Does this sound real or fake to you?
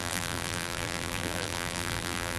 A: fake